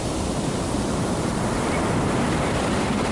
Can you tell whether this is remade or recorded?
recorded